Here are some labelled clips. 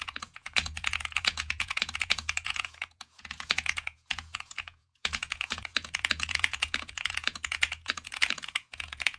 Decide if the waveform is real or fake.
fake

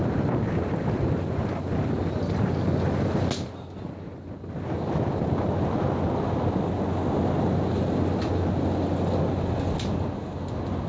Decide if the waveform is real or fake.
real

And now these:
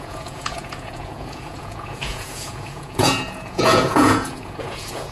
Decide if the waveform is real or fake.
fake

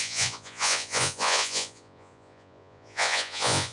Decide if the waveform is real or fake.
fake